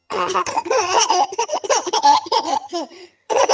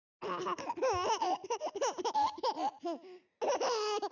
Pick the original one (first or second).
second